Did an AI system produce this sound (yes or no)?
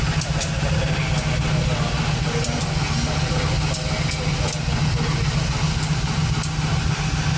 no